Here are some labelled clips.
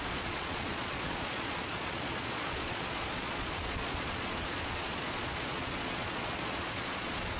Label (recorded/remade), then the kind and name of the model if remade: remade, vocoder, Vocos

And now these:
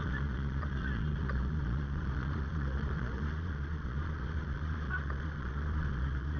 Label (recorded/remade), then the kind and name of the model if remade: remade, vocoder, Vocos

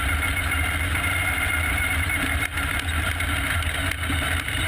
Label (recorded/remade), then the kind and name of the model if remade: recorded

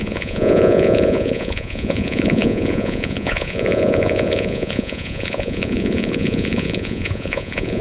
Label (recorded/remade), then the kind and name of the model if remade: remade, vocoder, Vocos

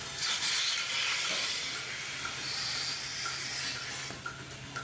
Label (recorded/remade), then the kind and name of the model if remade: recorded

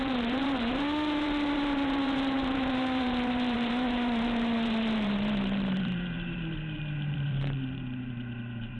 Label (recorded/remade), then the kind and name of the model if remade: remade, vocoder, BigVGAN v2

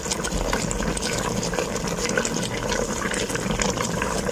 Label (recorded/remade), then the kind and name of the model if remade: recorded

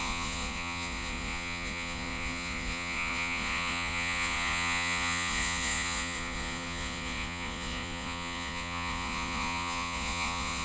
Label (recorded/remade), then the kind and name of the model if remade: remade, vocoder, Vocos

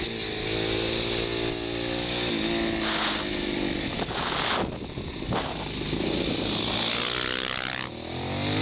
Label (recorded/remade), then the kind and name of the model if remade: recorded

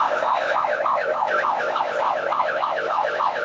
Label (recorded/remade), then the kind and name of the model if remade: remade, codec, ZipCodec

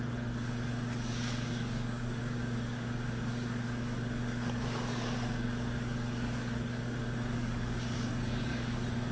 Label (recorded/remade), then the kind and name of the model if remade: remade, codec, DAC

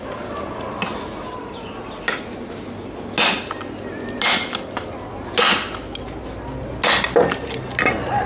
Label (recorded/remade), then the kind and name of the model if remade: recorded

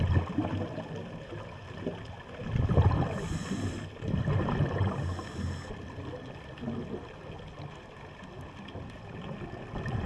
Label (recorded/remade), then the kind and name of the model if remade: recorded